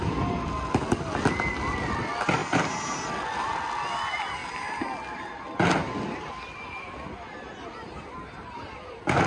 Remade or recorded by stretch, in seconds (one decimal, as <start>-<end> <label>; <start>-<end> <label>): 0.0-9.3 recorded